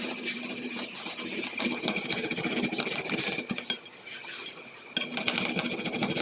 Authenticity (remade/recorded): recorded